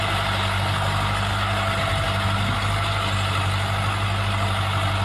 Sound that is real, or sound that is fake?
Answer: real